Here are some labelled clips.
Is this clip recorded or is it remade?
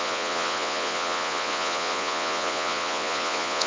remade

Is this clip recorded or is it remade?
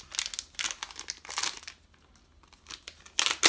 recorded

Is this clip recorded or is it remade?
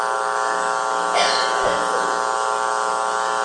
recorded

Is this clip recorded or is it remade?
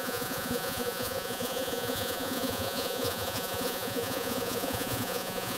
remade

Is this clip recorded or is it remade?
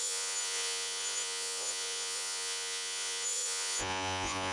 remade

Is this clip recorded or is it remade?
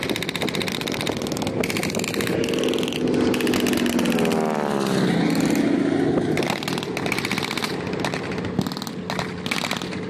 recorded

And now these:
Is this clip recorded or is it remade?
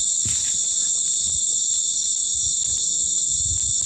recorded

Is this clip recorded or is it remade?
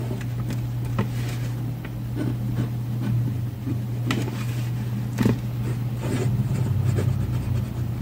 recorded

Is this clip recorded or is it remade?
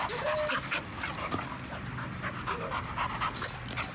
recorded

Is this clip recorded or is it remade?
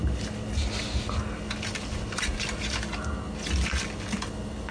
recorded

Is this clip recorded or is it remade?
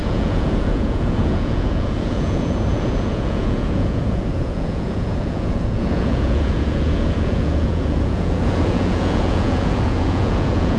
remade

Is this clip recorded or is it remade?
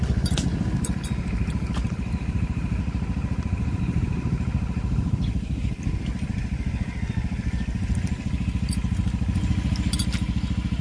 recorded